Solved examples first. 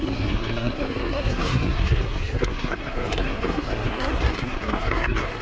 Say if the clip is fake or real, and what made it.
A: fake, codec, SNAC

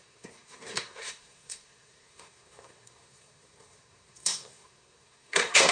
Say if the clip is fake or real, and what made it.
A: fake, codec, SNAC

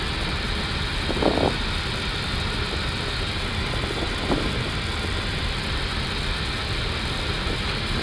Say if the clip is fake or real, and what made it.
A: real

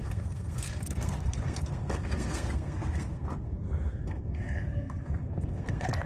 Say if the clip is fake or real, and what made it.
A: fake, codec, SNAC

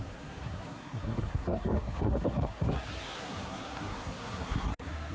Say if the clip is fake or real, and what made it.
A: fake, codec, SNAC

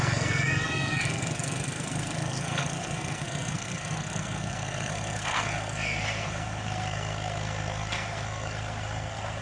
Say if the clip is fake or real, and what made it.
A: fake, codec, SNAC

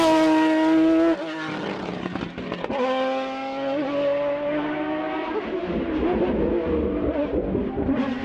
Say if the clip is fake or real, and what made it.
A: real